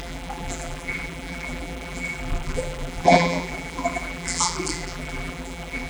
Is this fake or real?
fake